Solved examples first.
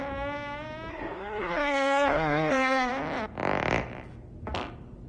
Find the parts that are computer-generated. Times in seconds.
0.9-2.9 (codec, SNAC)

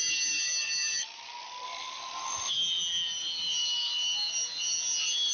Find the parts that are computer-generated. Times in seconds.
none

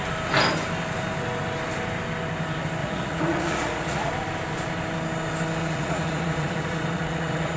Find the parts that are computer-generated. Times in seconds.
2.8-4.1 (vocoder, Vocos); 5.6-7.6

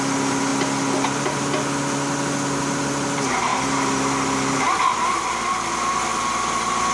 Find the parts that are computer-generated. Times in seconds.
none

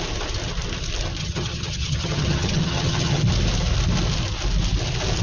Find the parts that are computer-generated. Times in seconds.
1.2-3.2 (vocoder, HiFi-GAN)

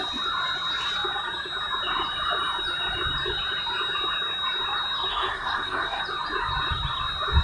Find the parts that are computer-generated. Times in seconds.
5.1-6.0 (codec, SNAC)

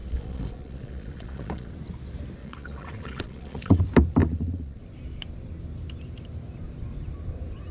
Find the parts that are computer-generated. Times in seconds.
0.0-1.7 (vocoder, Vocos); 2.4-3.8; 4.2-4.8

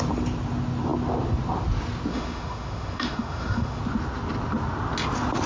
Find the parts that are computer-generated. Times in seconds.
2.1-3.8 (autoencoder, DAC-VAE)